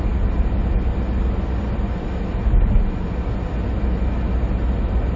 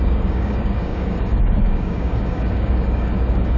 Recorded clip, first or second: first